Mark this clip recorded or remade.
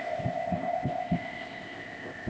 remade